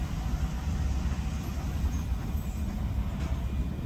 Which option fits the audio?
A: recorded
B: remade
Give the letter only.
A